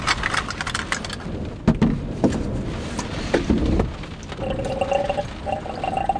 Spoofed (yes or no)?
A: no